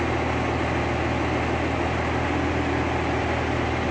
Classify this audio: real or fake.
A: real